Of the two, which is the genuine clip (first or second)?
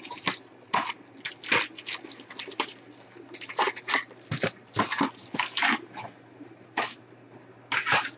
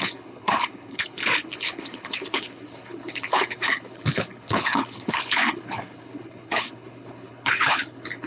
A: first